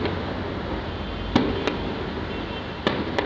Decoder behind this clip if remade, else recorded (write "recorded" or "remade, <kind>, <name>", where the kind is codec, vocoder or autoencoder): recorded